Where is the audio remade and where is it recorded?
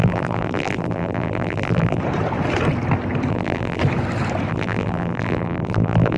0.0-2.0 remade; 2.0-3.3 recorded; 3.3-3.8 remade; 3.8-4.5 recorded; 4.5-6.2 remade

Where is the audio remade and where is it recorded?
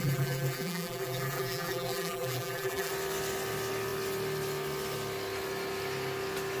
0.0-2.9 remade; 2.9-6.6 recorded